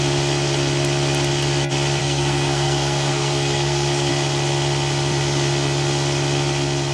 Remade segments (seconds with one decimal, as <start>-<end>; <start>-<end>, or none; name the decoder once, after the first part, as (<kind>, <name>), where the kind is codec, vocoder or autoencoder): 2.0-4.1 (codec, SNAC)